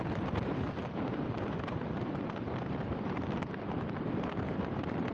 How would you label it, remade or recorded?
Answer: remade